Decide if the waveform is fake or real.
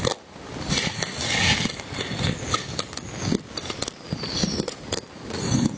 real